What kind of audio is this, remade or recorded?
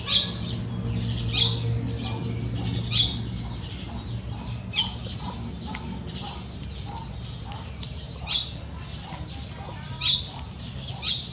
recorded